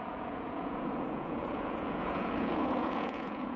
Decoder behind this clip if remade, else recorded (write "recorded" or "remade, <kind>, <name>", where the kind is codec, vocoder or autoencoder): remade, vocoder, Vocos